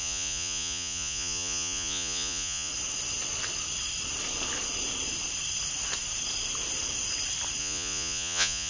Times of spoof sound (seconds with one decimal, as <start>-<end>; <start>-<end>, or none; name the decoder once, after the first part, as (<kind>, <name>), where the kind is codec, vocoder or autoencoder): 0.0-2.7 (vocoder, Vocos); 7.6-8.7